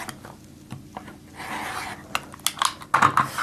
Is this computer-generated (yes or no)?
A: no